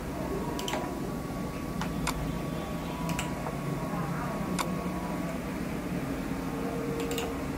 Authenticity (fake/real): fake